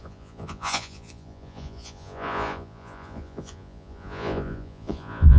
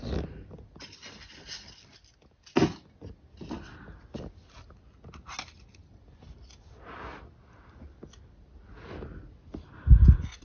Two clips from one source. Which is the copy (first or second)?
first